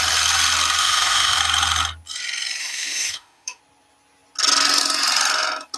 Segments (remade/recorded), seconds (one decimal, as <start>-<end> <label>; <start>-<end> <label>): 0.0-0.8 recorded; 0.8-1.4 remade; 1.4-2.6 recorded; 2.6-3.6 remade; 3.6-5.8 recorded